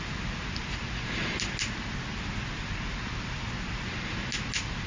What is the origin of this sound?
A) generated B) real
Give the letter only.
B